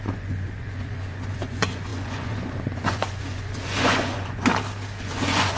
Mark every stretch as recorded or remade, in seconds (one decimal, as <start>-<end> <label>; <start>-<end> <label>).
0.0-4.5 remade; 4.5-5.0 recorded; 5.0-5.6 remade